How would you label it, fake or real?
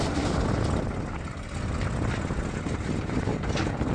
real